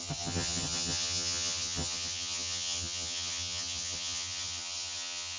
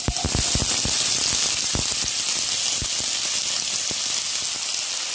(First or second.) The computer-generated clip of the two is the first